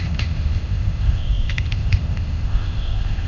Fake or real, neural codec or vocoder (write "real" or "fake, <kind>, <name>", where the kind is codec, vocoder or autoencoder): fake, codec, ZipCodec